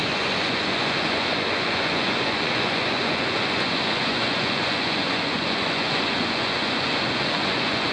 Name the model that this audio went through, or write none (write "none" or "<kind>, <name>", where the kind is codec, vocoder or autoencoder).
vocoder, Vocos